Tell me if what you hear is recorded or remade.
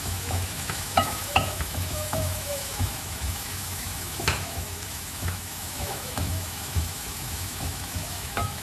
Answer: remade